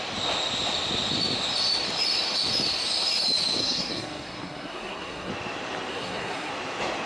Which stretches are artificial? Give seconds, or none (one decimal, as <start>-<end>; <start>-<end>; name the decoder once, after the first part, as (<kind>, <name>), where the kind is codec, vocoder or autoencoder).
3.6-5.3 (codec, SNAC); 5.9-6.5